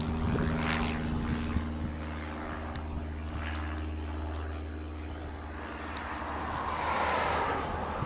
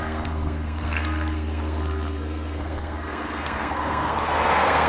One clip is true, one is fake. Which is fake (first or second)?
second